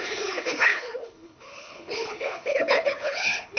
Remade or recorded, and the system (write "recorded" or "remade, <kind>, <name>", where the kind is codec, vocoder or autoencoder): remade, codec, HILCodec